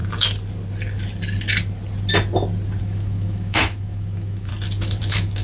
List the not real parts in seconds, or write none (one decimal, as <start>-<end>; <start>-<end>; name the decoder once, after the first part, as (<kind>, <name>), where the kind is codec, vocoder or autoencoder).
2.8-4.5 (autoencoder, DAC-VAE); 5.0-5.4